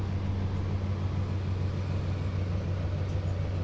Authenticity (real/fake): real